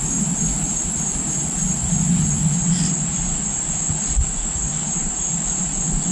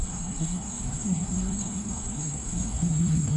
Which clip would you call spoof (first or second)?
second